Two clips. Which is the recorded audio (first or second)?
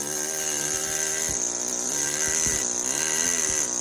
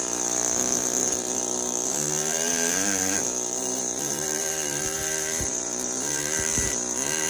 first